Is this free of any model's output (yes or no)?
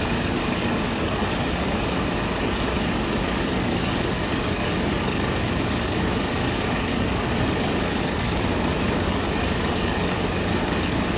no